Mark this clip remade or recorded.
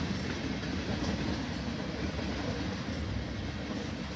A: recorded